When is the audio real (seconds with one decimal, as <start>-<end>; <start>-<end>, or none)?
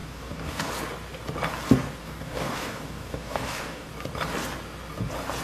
0.7-2.0; 3.9-5.4